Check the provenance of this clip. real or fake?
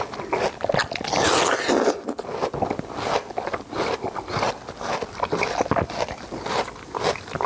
real